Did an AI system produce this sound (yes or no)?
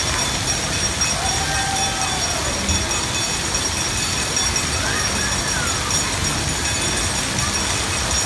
no